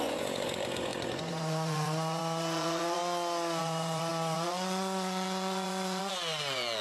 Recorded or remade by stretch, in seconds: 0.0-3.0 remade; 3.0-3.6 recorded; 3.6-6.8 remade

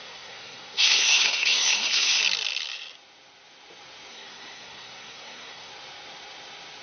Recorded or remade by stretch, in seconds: 0.0-2.2 remade; 2.2-4.1 recorded; 4.1-5.7 remade; 5.7-6.8 recorded

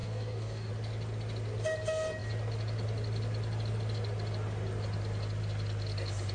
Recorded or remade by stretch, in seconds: 0.0-0.7 remade; 0.7-6.3 recorded

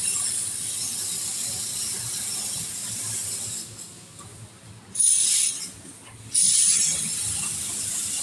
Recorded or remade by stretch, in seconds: 0.0-8.2 recorded

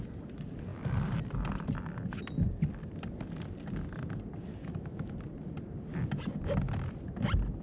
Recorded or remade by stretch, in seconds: 0.0-4.6 recorded; 4.6-5.1 remade; 5.1-7.6 recorded